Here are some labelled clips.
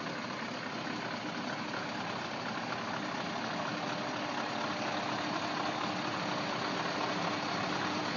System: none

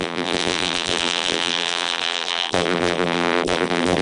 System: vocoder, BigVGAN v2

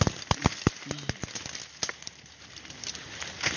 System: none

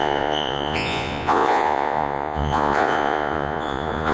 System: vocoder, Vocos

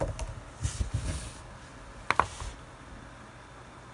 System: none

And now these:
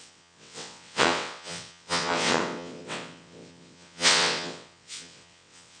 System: vocoder, WaveNeXt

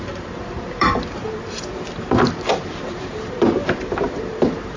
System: vocoder, BigVGAN v2